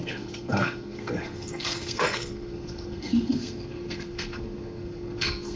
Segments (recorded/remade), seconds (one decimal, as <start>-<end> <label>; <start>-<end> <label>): 0.0-5.6 remade